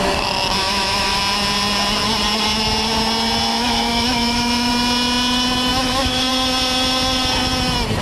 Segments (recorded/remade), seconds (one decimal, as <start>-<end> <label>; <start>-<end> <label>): 0.0-0.6 recorded; 0.6-1.2 remade; 1.2-3.5 recorded; 3.5-4.7 remade; 4.7-5.7 recorded; 5.7-6.3 remade; 6.3-8.0 recorded